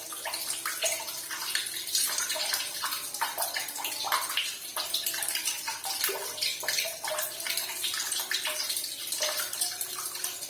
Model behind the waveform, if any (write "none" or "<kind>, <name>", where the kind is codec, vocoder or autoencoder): none